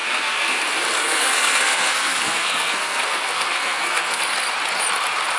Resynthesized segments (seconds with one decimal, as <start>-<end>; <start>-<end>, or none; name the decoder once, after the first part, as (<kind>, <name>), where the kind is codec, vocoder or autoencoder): 0.0-0.6 (codec, SNAC); 1.0-4.2